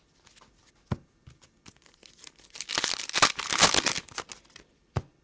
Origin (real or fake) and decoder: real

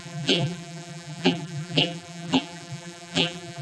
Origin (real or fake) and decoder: fake, vocoder, BigVGAN v2